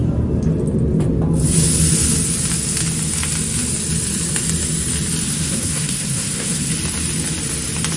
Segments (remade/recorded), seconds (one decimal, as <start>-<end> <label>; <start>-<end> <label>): 0.0-5.3 recorded; 5.3-6.7 remade; 6.7-8.0 recorded